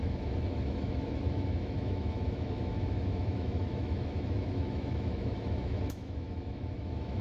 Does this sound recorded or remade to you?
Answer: remade